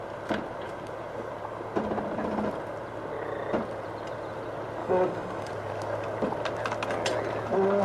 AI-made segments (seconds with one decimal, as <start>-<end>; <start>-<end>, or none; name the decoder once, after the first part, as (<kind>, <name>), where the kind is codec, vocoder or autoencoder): 4.8-5.5 (codec, DAC)